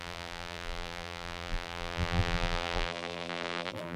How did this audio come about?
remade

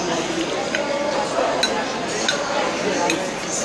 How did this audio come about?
recorded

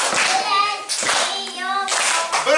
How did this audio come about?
recorded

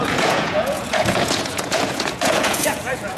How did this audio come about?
remade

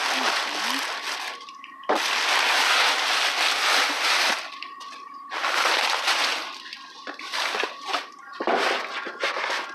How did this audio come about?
recorded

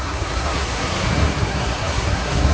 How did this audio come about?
remade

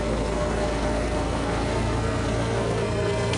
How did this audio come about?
remade